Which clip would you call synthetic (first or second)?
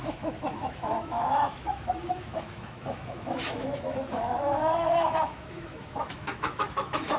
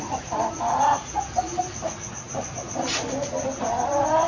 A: first